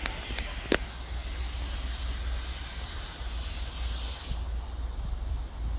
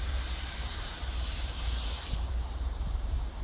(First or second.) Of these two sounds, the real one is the first